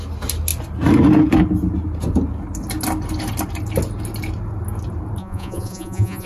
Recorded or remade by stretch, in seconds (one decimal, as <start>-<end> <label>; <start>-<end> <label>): 0.0-5.2 recorded; 5.2-6.3 remade